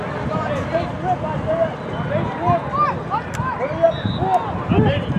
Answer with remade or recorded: remade